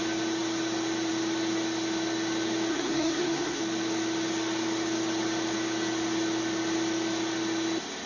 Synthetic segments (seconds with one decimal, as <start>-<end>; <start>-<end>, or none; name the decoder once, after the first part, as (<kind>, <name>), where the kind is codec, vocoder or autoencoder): 2.7-3.6 (codec, SNAC)